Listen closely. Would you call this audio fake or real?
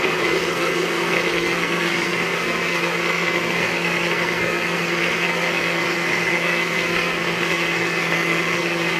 fake